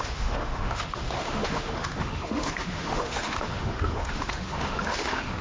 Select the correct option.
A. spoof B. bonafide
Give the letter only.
A